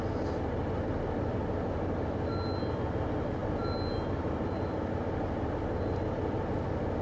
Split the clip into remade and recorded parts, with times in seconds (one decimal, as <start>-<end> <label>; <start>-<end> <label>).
0.0-7.0 recorded